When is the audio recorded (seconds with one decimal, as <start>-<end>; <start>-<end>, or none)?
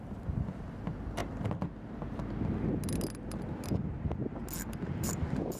1.2-4.6